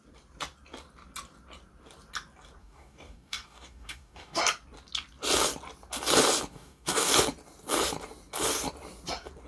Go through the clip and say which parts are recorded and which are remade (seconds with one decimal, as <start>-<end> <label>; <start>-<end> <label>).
0.0-2.6 recorded; 2.6-4.4 remade; 4.4-6.5 recorded; 6.5-7.1 remade; 7.1-9.5 recorded

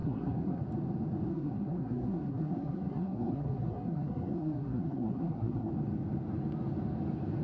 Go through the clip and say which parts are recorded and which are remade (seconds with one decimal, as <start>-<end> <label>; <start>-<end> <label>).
0.0-0.6 remade; 0.6-1.3 recorded; 1.3-5.7 remade; 5.7-7.4 recorded

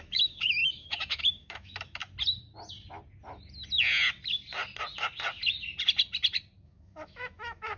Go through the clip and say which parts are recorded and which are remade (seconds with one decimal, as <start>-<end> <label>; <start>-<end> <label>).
0.0-2.0 remade; 2.0-6.6 recorded; 6.6-7.8 remade

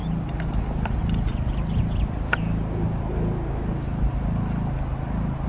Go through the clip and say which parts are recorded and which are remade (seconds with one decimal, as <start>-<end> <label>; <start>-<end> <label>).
0.0-5.5 recorded

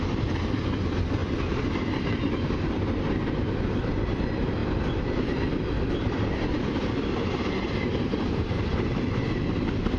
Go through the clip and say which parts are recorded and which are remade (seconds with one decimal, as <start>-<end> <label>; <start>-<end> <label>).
0.0-1.2 recorded; 1.2-2.7 remade; 2.7-10.0 recorded

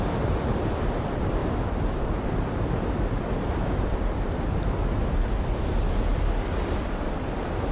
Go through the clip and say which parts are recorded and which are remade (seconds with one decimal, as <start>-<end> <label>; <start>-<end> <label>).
0.0-1.4 remade; 1.4-6.0 recorded; 6.0-7.7 remade

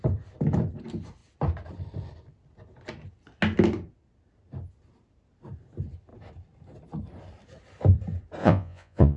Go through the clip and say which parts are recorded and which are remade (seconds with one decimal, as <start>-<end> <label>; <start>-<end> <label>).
0.0-8.4 recorded; 8.4-9.2 remade

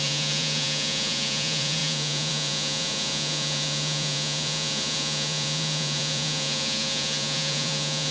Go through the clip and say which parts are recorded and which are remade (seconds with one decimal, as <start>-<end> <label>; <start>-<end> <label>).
0.0-8.1 remade